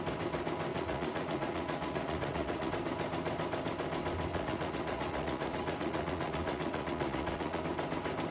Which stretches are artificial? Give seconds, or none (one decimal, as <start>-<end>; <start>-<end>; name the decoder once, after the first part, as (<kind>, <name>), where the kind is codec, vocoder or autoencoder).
0.7-2.7 (vocoder, Vocos); 4.3-7.6